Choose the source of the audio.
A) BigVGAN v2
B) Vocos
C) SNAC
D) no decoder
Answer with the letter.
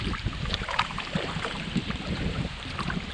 A